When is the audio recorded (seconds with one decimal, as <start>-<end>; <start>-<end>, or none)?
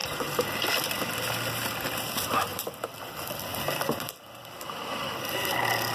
0.0-2.5; 3.1-3.5; 4.4-5.9